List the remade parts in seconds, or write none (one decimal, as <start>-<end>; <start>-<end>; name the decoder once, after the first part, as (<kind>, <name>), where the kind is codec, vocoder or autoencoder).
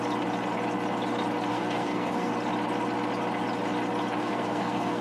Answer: 1.5-2.3 (codec, SNAC); 4.2-5.0